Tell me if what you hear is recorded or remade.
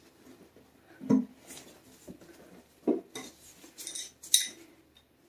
recorded